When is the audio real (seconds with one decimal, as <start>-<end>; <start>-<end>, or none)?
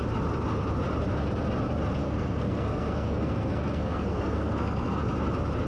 0.0-2.0; 5.0-5.7